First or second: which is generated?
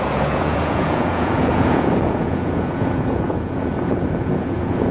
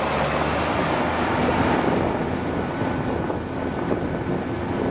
first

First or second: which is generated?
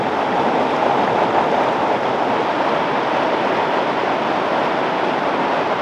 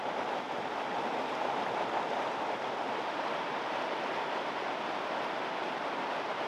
second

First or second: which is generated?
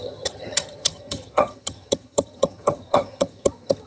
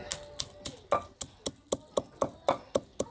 first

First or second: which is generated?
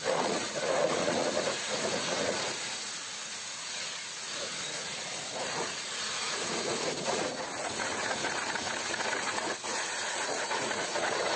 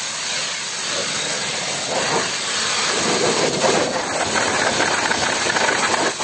first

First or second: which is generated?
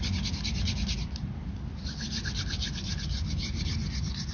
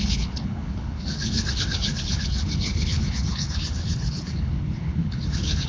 second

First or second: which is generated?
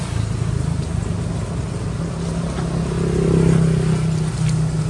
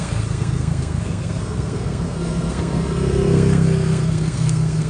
second